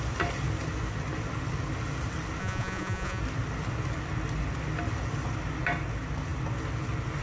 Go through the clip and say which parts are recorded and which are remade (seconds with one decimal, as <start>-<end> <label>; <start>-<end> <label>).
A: 0.0-2.4 recorded; 2.4-3.2 remade; 3.2-7.2 recorded